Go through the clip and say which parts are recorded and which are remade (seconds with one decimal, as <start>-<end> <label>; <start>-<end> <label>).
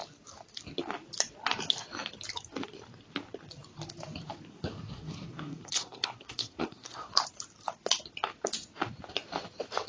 0.0-4.5 recorded; 4.5-7.1 remade; 7.1-9.9 recorded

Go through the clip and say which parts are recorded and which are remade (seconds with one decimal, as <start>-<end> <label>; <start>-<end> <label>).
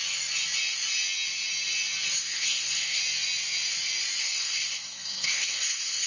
0.0-2.2 recorded; 2.2-3.0 remade; 3.0-4.2 recorded; 4.2-6.1 remade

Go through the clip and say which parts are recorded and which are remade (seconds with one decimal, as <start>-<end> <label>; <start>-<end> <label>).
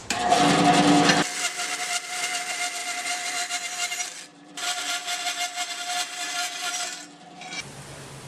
0.0-4.3 recorded; 4.3-4.8 remade; 4.8-8.3 recorded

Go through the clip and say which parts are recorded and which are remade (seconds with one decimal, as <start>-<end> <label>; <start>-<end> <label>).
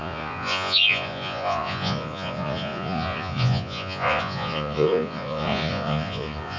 0.0-6.6 remade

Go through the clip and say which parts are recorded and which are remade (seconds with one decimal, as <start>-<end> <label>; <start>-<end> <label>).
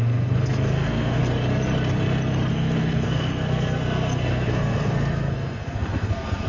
0.0-1.2 remade; 1.2-2.5 recorded; 2.5-6.5 remade